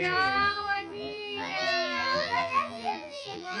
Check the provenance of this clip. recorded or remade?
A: remade